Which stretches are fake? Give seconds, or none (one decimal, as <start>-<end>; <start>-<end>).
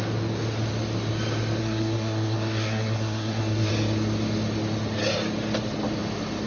1.6-3.7